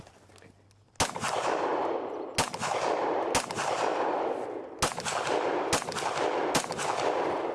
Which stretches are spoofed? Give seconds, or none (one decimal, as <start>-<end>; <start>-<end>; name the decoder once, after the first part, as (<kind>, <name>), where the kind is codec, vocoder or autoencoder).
none